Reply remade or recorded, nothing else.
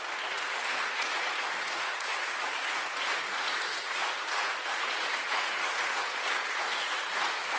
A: remade